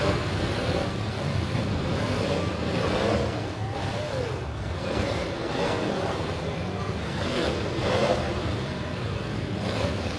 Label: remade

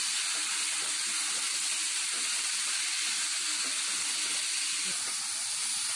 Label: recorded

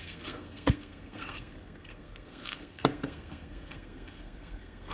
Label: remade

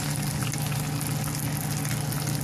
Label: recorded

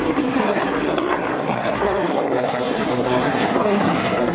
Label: remade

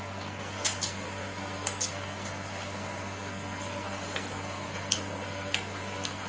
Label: remade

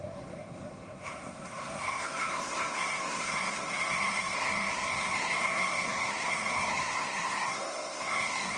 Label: remade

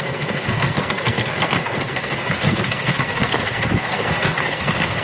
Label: remade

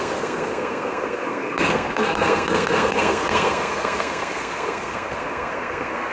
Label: remade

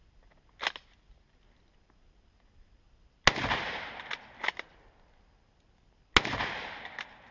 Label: recorded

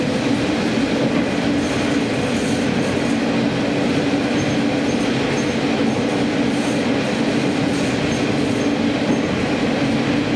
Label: recorded